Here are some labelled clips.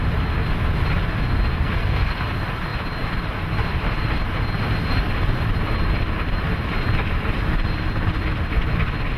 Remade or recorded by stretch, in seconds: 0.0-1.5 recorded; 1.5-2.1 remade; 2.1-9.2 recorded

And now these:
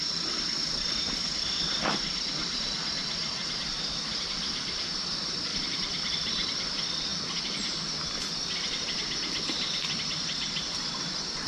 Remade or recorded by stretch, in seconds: 0.0-3.4 recorded; 3.4-4.1 remade; 4.1-5.5 recorded; 5.5-6.1 remade; 6.1-11.5 recorded

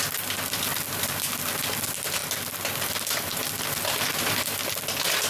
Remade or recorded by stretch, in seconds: 0.0-2.2 recorded; 2.2-4.7 remade; 4.7-5.3 recorded

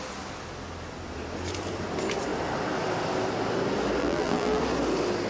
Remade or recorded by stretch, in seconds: 0.0-4.0 recorded; 4.0-4.6 remade; 4.6-5.3 recorded

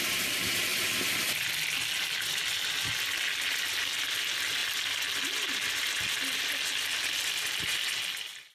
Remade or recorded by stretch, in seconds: 0.0-8.5 recorded

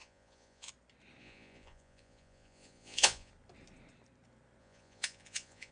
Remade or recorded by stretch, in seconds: 0.0-0.7 remade; 0.7-1.2 recorded; 1.2-3.3 remade; 3.3-4.6 recorded; 4.6-5.7 remade

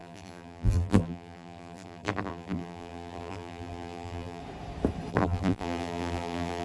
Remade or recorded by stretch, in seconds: 0.0-4.4 remade; 4.4-5.1 recorded; 5.1-6.6 remade

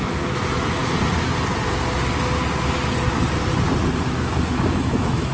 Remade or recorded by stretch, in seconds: 0.0-0.8 remade; 0.8-3.9 recorded; 3.9-5.3 remade